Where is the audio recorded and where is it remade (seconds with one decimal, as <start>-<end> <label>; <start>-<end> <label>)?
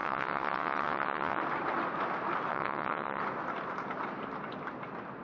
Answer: 0.0-1.4 remade; 1.4-2.5 recorded; 2.5-3.2 remade; 3.2-5.2 recorded